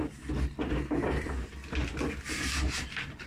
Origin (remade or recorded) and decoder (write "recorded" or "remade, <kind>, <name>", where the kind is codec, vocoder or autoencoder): recorded